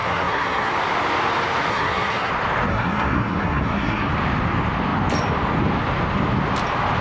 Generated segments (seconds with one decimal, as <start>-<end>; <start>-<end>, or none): 0.0-0.7; 1.7-2.3; 2.7-4.1